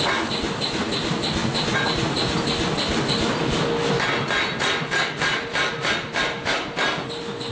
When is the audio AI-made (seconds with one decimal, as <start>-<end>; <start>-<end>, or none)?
none